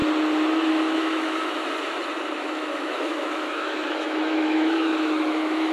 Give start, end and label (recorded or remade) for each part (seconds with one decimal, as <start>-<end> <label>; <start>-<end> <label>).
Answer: 0.0-0.7 recorded; 0.7-1.6 remade; 1.6-2.4 recorded; 2.4-5.7 remade